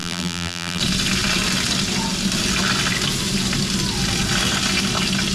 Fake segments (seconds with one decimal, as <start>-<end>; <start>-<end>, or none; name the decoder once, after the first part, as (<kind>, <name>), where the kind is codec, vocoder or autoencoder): 0.0-0.8 (vocoder, BigVGAN v2)